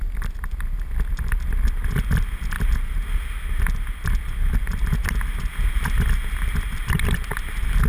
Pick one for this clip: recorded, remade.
recorded